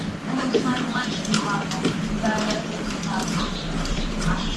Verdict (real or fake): fake